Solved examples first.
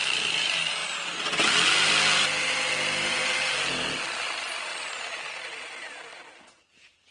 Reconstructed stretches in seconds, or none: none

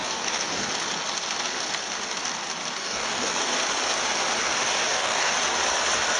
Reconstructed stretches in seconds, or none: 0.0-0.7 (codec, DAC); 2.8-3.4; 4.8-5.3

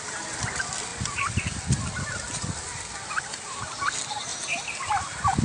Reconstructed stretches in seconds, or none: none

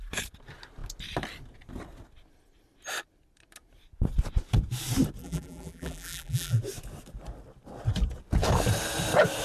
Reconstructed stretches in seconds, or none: 5.2-6.6 (vocoder, BigVGAN v2)